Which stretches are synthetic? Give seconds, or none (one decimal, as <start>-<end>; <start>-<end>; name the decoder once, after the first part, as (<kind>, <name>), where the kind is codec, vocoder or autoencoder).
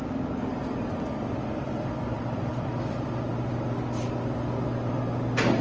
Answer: 0.5-3.3 (vocoder, BigVGAN v2)